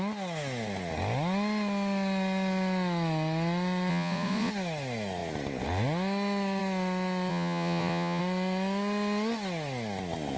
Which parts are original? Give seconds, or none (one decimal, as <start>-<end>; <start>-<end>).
0.0-3.9; 4.5-7.3; 8.2-10.4